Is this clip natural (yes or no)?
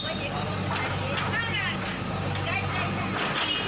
yes